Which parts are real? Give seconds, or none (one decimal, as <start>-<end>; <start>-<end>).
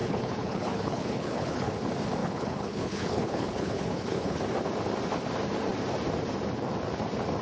1.7-2.2; 4.4-7.4